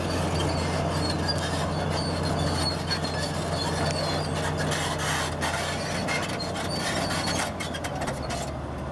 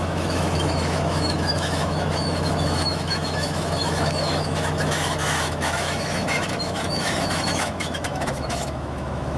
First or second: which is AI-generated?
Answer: second